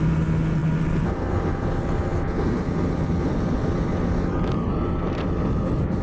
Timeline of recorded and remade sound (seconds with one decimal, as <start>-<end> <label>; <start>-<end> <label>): 0.0-6.0 recorded